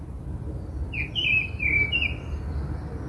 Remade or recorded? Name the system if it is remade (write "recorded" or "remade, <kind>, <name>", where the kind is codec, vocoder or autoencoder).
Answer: recorded